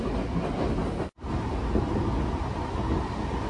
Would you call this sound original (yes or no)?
yes